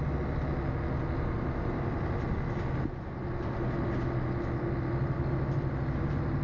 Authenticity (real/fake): real